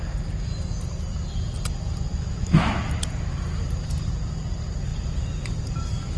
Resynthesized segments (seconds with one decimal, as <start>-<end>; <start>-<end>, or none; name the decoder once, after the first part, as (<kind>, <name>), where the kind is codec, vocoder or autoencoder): 2.1-2.8 (autoencoder, DAC-VAE)